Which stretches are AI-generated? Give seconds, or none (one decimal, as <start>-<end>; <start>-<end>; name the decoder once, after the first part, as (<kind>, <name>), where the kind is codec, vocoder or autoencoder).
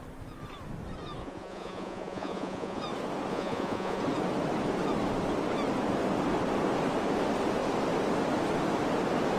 1.2-2.8 (vocoder, Vocos); 3.3-4.0